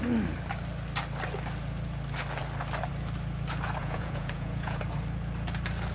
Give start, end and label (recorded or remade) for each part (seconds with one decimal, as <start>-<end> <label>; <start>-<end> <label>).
0.0-3.8 recorded; 3.8-4.8 remade; 4.8-5.9 recorded